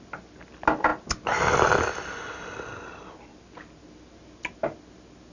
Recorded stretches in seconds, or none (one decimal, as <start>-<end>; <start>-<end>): 0.0-5.3